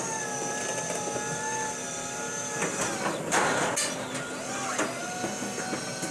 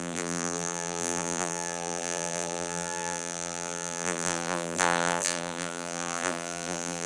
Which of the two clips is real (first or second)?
first